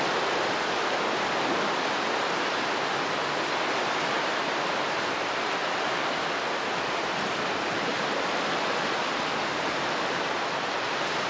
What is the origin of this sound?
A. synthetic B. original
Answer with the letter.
B